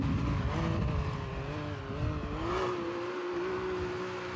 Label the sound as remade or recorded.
recorded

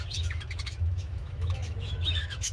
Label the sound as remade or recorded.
remade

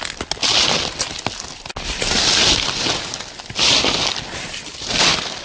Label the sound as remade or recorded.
recorded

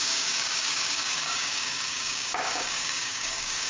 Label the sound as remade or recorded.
remade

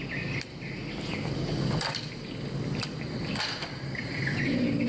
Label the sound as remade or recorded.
recorded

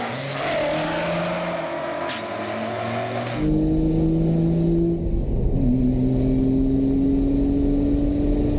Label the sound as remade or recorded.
recorded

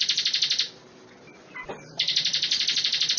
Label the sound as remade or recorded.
remade